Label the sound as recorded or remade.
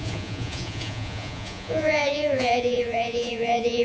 remade